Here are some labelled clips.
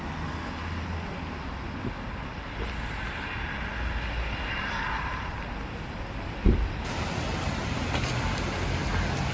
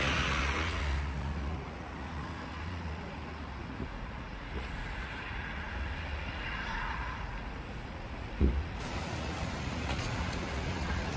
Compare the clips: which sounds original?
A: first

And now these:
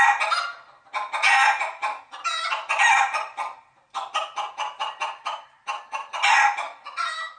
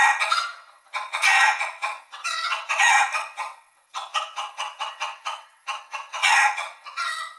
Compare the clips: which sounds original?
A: first